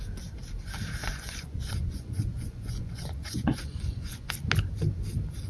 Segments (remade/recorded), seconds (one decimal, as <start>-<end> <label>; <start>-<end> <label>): 0.0-1.0 recorded; 1.0-4.3 remade; 4.3-5.5 recorded